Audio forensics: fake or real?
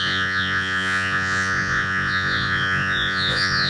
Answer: fake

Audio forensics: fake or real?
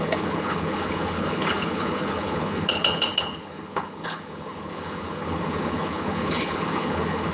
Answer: fake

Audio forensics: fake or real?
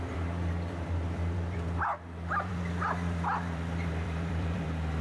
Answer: fake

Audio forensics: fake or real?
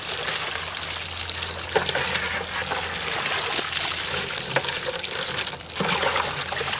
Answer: real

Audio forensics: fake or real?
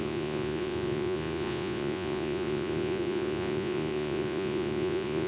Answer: fake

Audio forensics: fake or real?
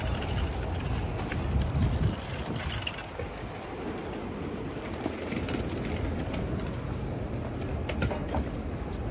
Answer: real